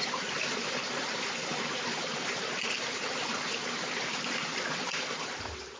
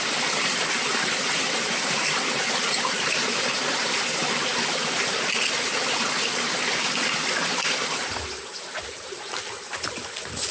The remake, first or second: second